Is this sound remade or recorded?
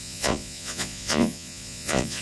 remade